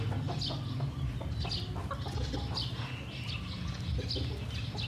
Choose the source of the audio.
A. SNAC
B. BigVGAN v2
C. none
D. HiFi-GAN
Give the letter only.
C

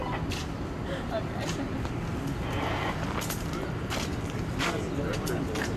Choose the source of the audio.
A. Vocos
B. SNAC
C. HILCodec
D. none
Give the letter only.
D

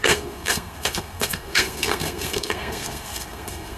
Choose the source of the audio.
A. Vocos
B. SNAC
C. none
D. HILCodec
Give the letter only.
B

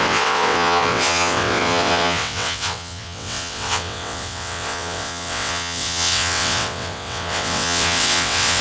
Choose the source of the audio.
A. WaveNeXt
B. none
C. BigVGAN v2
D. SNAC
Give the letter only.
A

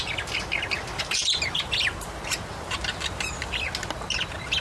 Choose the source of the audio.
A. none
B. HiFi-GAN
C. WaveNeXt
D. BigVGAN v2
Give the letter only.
A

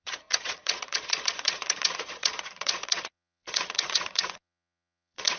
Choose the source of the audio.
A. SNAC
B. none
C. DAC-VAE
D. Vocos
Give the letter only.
D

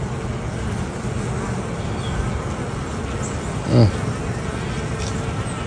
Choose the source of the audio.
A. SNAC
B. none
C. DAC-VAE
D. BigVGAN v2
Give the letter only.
B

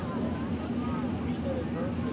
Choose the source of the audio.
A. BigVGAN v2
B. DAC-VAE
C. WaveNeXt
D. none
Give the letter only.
D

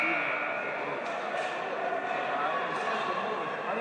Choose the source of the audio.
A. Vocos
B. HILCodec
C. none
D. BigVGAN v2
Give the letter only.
C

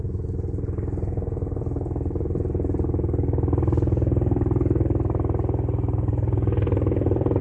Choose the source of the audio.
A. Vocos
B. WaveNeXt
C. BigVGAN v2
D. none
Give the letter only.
D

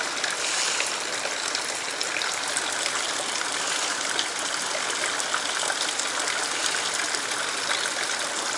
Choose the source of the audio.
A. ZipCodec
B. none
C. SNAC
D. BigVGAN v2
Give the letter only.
B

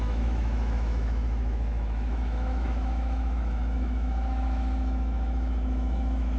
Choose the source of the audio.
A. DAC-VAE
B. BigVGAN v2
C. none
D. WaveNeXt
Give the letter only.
A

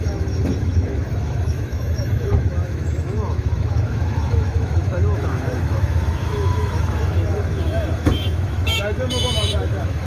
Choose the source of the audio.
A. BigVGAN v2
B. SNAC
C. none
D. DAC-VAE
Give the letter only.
D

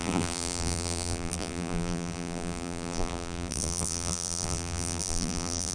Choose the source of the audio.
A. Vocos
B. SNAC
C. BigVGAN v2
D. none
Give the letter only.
C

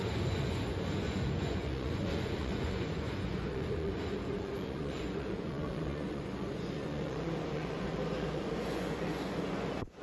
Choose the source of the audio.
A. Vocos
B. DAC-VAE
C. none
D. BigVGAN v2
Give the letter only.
A